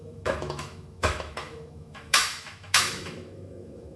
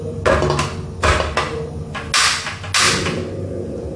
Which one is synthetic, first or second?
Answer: first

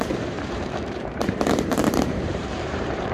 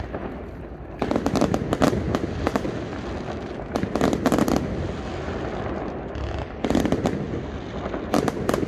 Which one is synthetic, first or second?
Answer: first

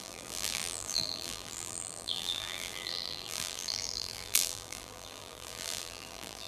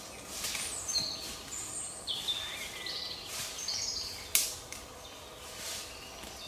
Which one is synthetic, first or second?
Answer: first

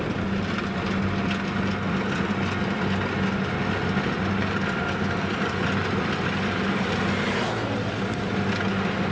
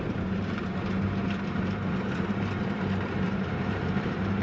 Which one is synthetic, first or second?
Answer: second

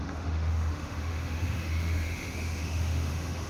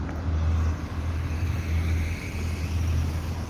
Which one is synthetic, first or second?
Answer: first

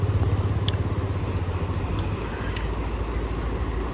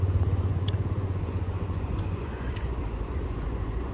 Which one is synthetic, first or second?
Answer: second